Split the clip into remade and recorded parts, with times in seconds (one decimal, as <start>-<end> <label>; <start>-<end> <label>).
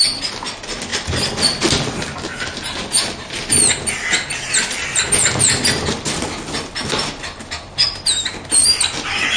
0.0-9.4 recorded